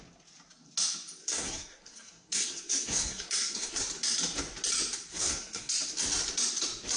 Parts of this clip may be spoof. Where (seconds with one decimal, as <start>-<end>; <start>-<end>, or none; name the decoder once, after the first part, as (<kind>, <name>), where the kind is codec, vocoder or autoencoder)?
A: 1.2-3.8 (codec, SNAC); 5.1-5.7